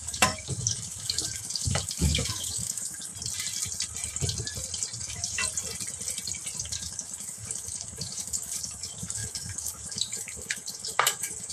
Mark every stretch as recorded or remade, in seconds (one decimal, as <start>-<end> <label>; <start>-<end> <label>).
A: 0.0-3.1 remade; 3.1-5.0 recorded; 5.0-5.4 remade; 5.4-6.6 recorded; 6.6-11.5 remade